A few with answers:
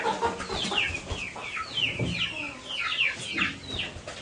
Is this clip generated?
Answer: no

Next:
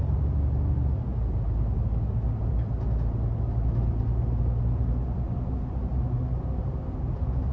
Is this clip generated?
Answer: no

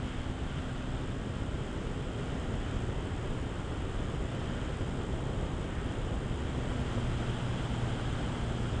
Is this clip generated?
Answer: no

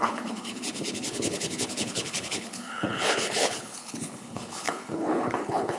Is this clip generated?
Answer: yes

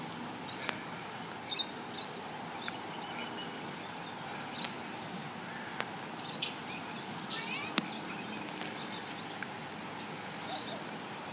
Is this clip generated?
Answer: no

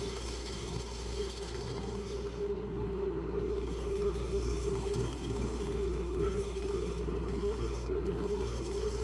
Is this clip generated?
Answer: yes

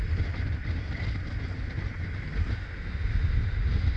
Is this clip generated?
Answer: no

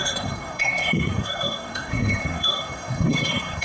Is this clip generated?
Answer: yes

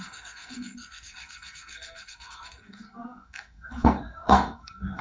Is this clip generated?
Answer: yes